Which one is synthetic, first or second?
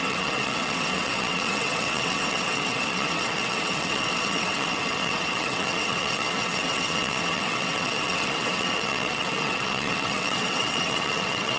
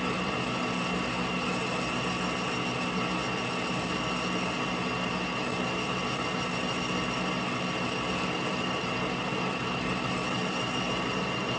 first